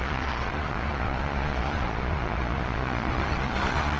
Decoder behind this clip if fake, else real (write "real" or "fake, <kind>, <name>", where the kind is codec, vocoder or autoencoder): fake, vocoder, Vocos